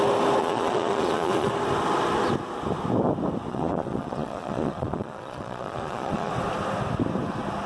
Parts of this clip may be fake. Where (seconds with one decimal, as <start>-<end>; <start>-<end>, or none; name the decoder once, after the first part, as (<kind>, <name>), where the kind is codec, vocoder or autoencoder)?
0.4-1.5 (vocoder, Vocos); 3.5-6.3